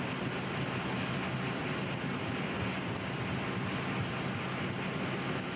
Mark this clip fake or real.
real